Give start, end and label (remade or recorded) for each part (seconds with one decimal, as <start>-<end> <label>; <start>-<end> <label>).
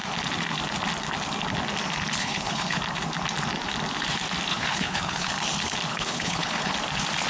0.0-2.2 recorded; 2.2-2.8 remade; 2.8-4.5 recorded; 4.5-5.3 remade; 5.3-5.9 recorded; 5.9-6.7 remade; 6.7-7.3 recorded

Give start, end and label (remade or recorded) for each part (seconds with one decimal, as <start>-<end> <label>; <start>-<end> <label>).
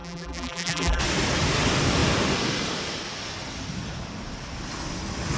0.0-1.0 remade; 1.0-5.4 recorded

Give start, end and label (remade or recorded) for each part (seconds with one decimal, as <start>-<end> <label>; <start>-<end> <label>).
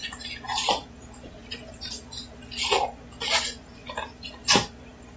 0.0-2.4 remade; 2.4-3.3 recorded; 3.3-5.2 remade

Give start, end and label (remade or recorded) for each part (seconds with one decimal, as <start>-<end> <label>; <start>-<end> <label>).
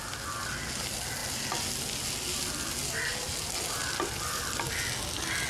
0.0-5.5 recorded